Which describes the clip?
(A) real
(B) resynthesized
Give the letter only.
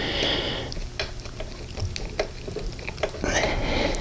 A